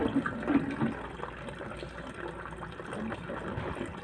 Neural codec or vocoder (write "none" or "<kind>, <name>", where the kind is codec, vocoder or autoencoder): none